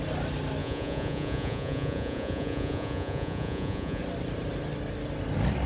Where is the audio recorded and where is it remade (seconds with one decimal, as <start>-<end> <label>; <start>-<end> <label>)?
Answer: 0.0-0.6 recorded; 0.6-4.0 remade; 4.0-5.7 recorded